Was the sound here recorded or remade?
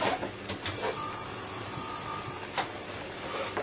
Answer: recorded